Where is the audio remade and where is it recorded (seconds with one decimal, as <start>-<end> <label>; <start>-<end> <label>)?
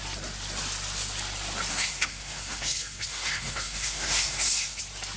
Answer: 0.0-1.7 recorded; 1.7-4.8 remade; 4.8-5.2 recorded